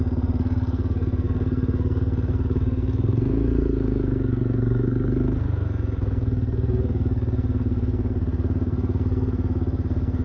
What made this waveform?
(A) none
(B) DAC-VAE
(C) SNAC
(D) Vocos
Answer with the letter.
C